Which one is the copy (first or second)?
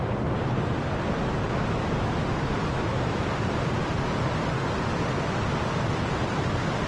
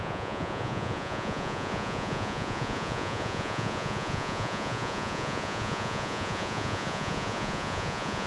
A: second